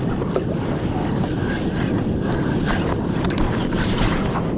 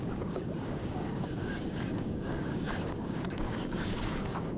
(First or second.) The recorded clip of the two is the first